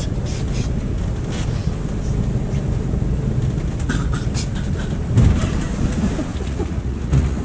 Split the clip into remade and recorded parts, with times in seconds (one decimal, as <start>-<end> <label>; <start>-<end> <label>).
0.0-6.3 recorded; 6.3-7.4 remade